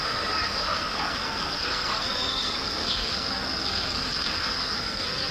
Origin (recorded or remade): remade